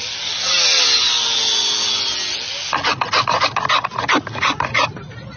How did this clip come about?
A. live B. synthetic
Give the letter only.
A